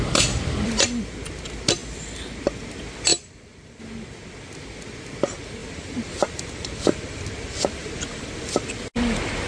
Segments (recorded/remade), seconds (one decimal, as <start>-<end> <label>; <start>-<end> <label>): 0.0-3.1 recorded; 3.1-3.8 remade; 3.8-5.6 recorded; 5.6-7.2 remade; 7.2-7.8 recorded; 7.8-8.3 remade; 8.3-9.5 recorded